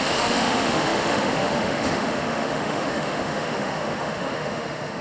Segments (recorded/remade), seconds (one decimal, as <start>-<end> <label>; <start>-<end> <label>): 0.0-5.0 remade